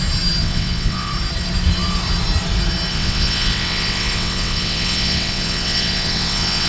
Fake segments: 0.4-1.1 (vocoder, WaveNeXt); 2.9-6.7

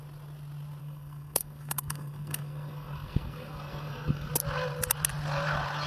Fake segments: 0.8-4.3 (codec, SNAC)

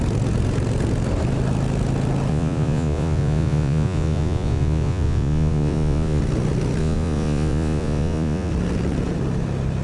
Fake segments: 2.3-6.2 (vocoder, Vocos); 6.8-8.5

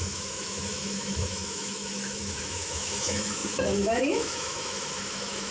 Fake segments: 0.0-5.5 (autoencoder, DAC-VAE)